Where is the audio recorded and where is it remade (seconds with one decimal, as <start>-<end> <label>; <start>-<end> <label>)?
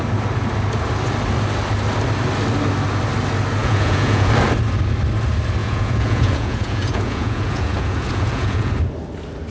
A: 0.0-3.6 recorded; 3.6-4.3 remade; 4.3-5.6 recorded; 5.6-8.7 remade; 8.7-9.5 recorded